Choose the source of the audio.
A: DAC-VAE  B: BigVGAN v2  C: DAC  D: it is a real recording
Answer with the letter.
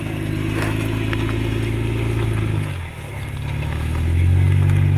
D